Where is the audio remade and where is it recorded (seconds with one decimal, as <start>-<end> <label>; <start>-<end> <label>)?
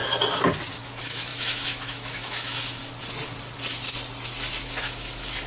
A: 0.0-0.8 recorded; 0.8-2.8 remade; 2.8-4.8 recorded; 4.8-5.5 remade